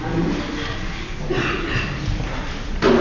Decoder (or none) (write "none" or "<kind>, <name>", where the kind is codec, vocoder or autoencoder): none